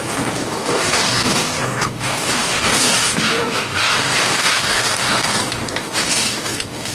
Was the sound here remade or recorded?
remade